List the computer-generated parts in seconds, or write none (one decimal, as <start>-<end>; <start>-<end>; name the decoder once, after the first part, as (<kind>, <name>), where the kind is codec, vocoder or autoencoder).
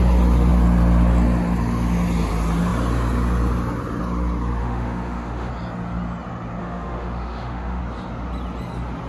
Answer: 4.6-5.5 (autoencoder, DAC-VAE); 6.6-7.8